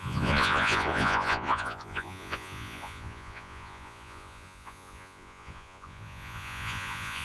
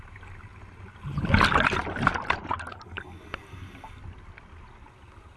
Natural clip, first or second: second